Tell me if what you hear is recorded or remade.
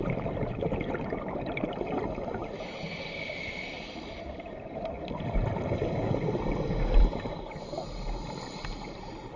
recorded